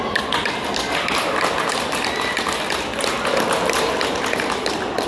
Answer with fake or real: real